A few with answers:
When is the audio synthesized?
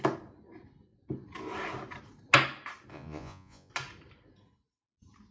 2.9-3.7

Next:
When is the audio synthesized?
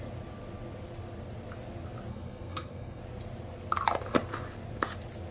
2.1-3.0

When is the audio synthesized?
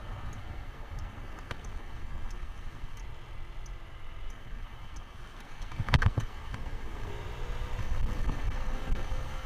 0.0-3.0; 4.3-7.1; 7.8-9.5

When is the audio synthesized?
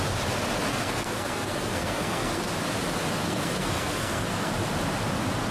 0.7-2.5; 3.2-4.5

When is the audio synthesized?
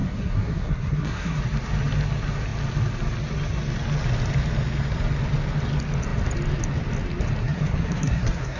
0.0-1.4; 7.4-8.6